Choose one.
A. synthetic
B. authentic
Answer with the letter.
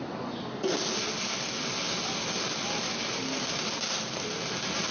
B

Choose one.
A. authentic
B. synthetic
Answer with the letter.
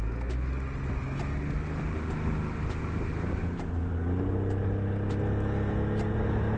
A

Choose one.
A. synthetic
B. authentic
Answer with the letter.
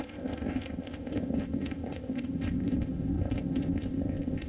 A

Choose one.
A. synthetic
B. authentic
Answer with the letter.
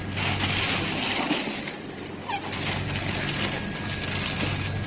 B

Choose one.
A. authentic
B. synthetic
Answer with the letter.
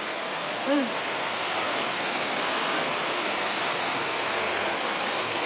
B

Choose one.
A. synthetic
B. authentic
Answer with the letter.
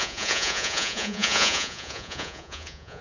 A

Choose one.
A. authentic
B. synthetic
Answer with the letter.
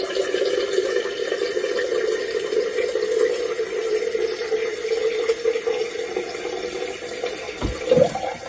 B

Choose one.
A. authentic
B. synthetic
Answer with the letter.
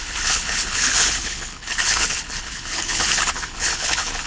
B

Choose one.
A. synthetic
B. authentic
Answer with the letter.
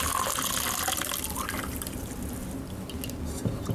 B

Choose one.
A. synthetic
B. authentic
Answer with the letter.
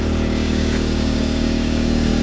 A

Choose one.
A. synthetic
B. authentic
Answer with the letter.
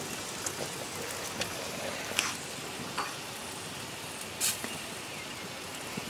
B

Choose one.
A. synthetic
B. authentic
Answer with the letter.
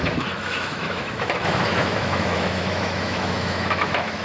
A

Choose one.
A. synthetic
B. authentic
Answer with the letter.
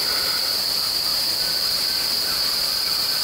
B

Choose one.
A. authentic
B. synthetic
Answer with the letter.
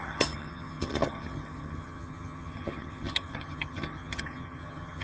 B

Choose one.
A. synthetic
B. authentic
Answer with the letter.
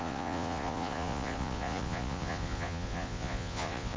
A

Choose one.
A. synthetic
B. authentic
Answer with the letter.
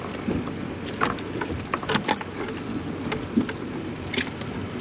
B